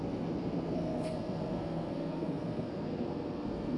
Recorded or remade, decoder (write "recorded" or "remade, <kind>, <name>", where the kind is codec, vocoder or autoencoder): remade, codec, SNAC